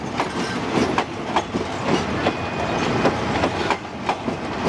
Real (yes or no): yes